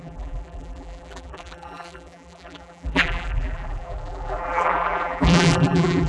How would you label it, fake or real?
fake